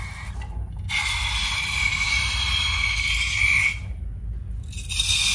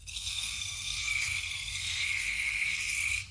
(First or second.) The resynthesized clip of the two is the second